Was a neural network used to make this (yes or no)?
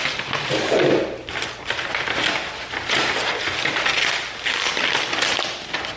no